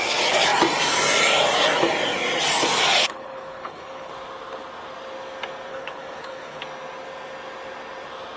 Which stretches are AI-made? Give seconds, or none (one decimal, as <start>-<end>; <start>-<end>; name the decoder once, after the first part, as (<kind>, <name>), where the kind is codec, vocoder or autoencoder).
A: 3.0-4.1 (codec, HILCodec); 5.7-6.6